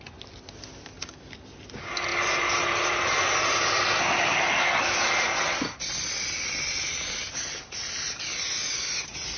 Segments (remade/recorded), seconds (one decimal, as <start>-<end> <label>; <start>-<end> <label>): 0.0-2.1 recorded; 2.1-4.8 remade; 4.8-9.4 recorded